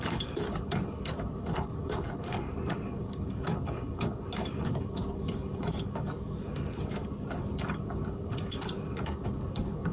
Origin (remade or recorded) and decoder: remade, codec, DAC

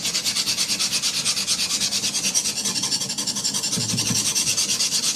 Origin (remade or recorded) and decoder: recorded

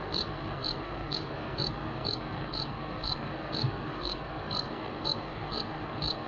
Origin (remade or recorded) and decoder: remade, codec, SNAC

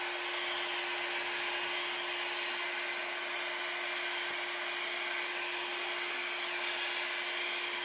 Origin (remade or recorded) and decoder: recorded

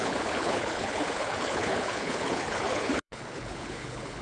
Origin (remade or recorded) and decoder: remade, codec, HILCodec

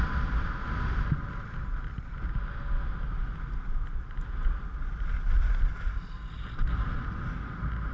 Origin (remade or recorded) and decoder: recorded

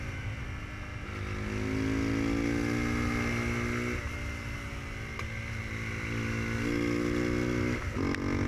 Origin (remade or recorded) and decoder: recorded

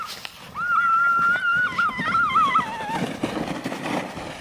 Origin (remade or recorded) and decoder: recorded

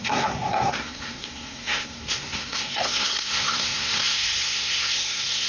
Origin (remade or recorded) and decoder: remade, codec, SNAC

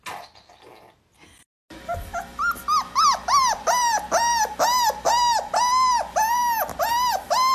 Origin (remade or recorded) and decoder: recorded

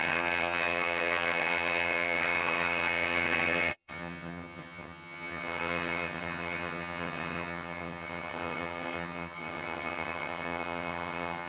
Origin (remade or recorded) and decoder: remade, vocoder, HiFi-GAN